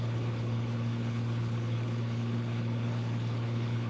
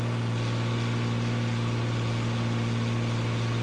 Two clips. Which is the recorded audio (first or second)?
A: second